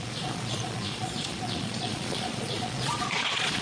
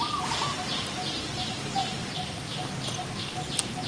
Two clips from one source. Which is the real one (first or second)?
second